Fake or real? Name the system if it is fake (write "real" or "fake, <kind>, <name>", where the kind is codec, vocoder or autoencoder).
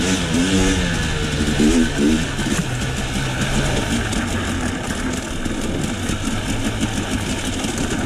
real